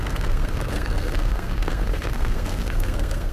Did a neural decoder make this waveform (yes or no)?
yes